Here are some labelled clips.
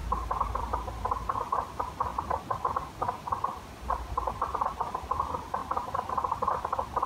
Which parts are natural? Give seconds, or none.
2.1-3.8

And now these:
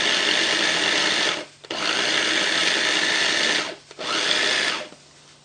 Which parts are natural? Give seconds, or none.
0.0-5.4

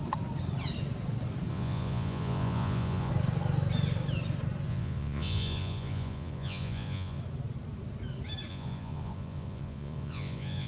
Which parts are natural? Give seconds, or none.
0.0-1.5; 3.1-4.7; 7.2-8.5

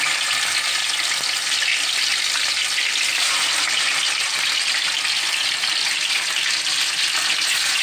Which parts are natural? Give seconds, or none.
0.0-7.8

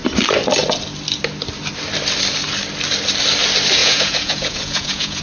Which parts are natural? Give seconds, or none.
0.0-3.8